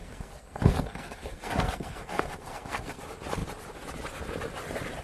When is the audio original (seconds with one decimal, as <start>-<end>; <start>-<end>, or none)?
3.0-5.0